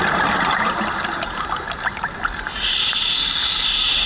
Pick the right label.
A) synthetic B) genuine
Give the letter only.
B